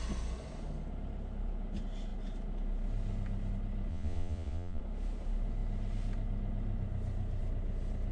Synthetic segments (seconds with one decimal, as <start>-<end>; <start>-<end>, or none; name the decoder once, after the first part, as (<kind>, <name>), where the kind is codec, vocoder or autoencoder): 3.9-4.8 (vocoder, Vocos)